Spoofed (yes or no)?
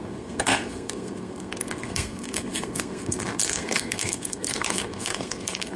yes